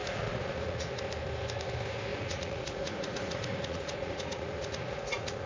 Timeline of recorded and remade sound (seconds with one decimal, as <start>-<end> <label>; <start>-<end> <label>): 0.0-1.0 remade; 1.0-2.1 recorded; 2.1-5.5 remade